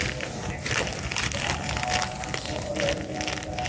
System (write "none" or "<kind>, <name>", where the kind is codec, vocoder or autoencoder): none